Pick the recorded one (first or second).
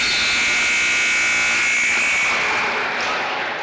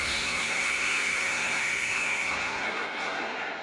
first